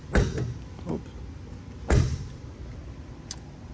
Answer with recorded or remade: recorded